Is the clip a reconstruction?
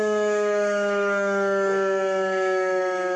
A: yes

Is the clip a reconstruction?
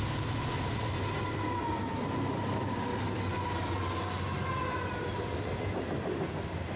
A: no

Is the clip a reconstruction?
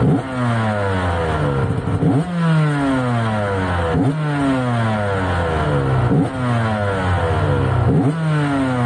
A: no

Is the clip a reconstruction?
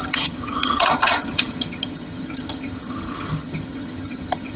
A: yes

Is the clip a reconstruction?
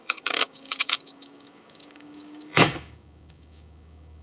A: yes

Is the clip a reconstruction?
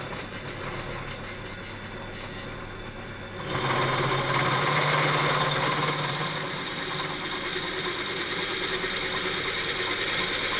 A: no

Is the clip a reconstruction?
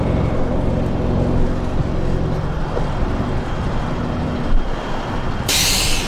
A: no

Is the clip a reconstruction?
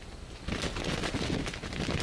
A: no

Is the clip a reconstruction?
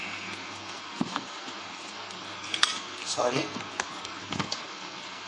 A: yes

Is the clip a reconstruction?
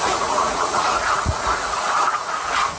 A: yes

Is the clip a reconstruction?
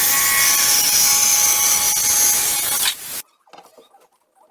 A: no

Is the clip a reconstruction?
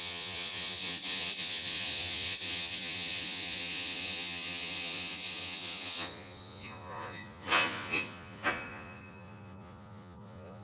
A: yes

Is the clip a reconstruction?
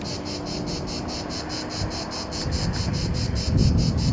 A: no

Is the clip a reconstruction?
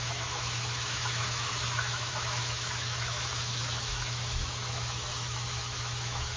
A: yes